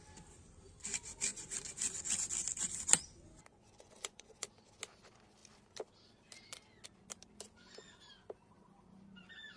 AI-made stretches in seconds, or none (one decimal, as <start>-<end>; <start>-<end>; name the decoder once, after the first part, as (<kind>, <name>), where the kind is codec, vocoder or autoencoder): 3.5-4.5 (vocoder, Vocos)